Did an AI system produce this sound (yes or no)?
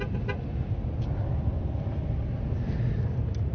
no